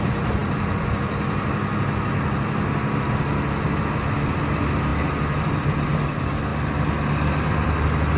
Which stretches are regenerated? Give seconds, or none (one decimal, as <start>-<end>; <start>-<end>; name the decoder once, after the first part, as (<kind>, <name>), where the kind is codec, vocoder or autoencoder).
none